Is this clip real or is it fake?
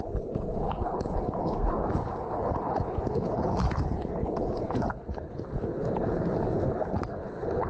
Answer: fake